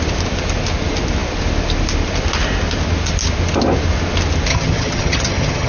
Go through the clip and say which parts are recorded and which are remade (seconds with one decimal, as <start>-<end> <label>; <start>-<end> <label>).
0.0-4.5 recorded; 4.5-5.7 remade

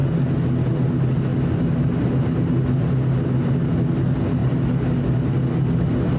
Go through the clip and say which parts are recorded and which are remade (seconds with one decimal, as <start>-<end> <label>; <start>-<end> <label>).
0.0-6.2 recorded

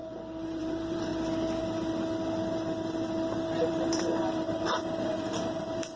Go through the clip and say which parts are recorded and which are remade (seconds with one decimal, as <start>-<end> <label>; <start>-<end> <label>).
0.0-1.1 remade; 1.1-3.3 recorded; 3.3-6.0 remade

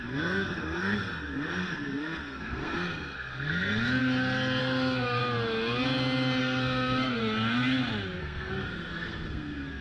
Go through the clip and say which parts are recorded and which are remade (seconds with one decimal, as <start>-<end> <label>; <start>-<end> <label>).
0.0-4.0 remade; 4.0-4.6 recorded; 4.6-5.2 remade; 5.2-6.4 recorded; 6.4-7.2 remade; 7.2-8.2 recorded; 8.2-9.8 remade

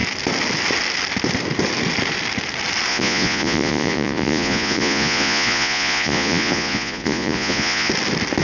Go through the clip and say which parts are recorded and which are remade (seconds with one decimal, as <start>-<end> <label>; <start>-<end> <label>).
0.0-2.9 recorded; 2.9-7.9 remade; 7.9-8.4 recorded

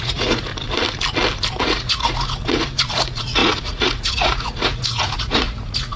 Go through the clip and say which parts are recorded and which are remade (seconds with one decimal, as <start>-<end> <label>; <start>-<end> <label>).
0.0-0.5 remade; 0.5-1.6 recorded; 1.6-6.0 remade

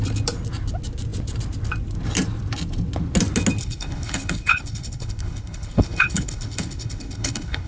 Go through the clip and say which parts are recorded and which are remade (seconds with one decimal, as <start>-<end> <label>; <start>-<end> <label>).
0.0-3.6 recorded; 3.6-7.7 remade